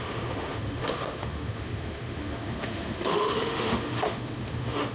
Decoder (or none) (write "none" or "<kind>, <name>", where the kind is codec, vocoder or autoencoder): autoencoder, DAC-VAE